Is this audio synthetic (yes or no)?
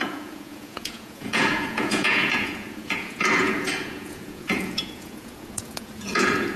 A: yes